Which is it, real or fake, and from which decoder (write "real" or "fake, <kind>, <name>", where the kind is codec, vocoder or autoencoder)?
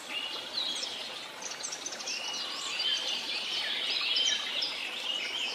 real